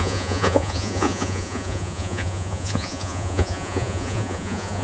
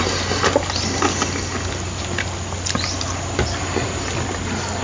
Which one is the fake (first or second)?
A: first